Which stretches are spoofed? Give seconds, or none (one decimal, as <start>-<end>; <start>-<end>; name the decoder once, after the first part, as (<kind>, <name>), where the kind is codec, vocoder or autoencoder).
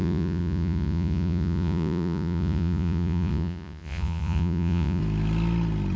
0.0-5.0 (vocoder, Vocos)